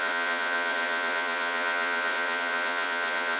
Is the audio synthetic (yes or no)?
yes